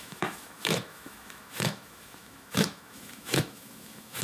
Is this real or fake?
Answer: fake